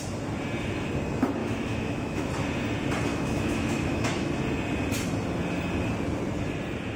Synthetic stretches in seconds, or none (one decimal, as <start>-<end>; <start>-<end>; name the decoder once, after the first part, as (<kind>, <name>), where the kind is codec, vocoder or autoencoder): 1.4-2.3 (autoencoder, DAC-VAE); 3.1-4.3